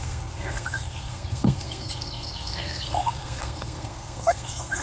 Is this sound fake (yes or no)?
yes